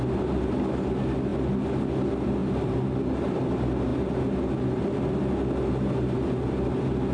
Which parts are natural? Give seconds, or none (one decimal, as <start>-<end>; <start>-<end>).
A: 0.0-2.4; 3.2-7.1